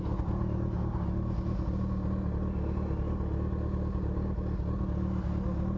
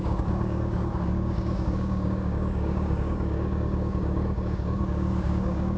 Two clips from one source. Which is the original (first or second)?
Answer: first